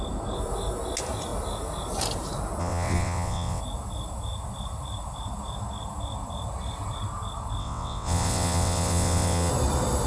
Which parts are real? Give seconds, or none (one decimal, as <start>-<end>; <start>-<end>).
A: 0.0-2.6; 3.6-7.6; 9.5-10.1